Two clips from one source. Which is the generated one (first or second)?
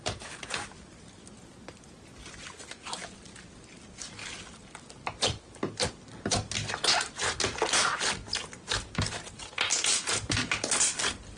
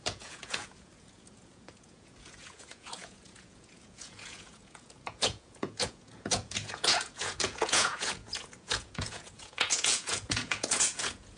second